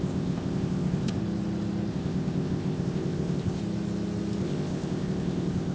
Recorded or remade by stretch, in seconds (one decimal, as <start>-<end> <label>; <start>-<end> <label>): 0.0-1.2 remade; 1.2-1.9 recorded; 1.9-3.6 remade; 3.6-4.4 recorded; 4.4-5.7 remade